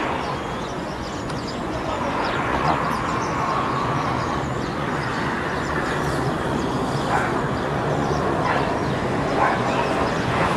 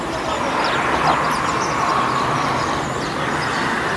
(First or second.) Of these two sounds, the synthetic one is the first